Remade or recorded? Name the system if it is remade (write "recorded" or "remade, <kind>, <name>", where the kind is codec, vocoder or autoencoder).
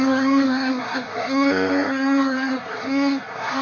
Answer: remade, codec, SNAC